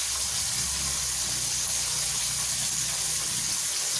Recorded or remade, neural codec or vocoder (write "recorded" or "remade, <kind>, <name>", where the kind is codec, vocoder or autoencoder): recorded